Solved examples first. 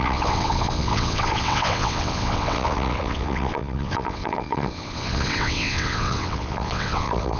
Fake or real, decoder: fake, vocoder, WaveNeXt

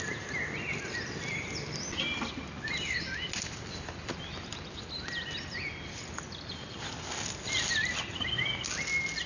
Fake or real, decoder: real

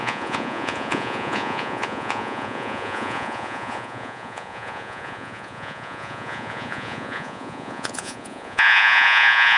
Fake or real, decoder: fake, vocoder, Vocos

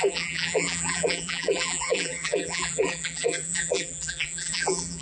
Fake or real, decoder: fake, vocoder, BigVGAN v2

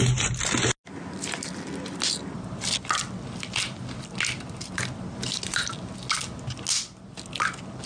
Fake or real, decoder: real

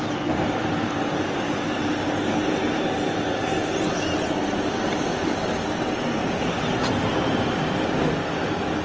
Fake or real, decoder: real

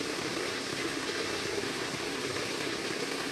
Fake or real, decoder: fake, codec, SNAC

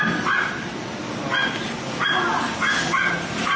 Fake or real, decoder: real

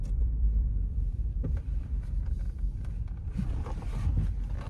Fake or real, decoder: fake, vocoder, BigVGAN v2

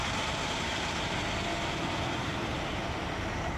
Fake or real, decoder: real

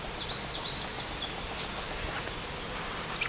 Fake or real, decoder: real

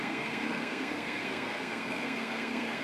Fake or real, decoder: fake, codec, SNAC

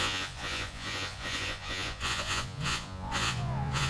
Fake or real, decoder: fake, vocoder, Vocos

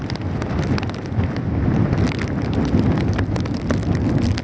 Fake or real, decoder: real